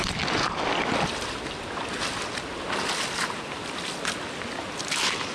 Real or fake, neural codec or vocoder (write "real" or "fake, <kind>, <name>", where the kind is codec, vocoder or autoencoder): real